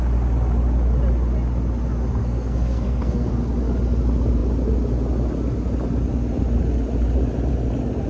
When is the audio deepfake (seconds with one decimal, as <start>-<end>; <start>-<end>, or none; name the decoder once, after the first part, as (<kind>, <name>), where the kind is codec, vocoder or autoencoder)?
2.2-3.3 (codec, SNAC)